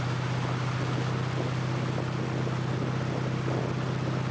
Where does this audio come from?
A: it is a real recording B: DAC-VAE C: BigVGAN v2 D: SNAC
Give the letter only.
A